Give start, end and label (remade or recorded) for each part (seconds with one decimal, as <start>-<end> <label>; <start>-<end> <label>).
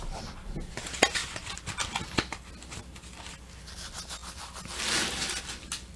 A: 0.0-6.0 recorded